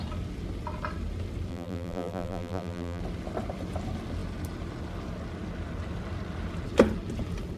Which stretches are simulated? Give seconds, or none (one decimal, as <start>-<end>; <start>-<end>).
1.5-3.0